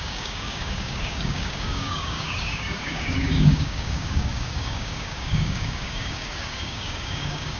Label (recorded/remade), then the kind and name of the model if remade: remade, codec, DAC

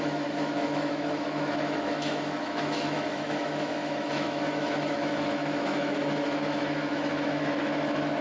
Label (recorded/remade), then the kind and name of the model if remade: remade, autoencoder, DAC-VAE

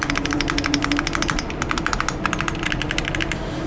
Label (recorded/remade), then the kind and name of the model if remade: recorded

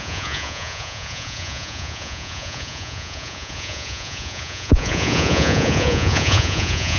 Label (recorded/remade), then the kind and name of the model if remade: remade, vocoder, Vocos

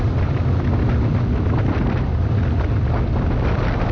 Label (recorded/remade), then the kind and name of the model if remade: recorded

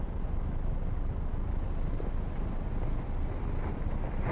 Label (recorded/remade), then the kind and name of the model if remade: recorded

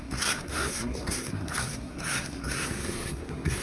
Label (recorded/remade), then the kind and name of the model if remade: remade, codec, SNAC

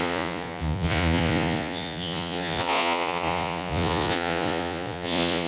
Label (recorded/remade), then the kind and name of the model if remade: remade, vocoder, Vocos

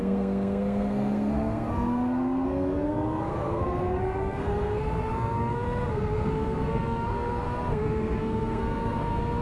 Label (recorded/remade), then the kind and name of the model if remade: remade, codec, SNAC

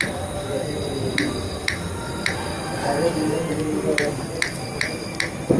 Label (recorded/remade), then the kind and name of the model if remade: recorded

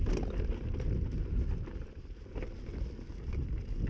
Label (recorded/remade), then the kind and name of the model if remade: recorded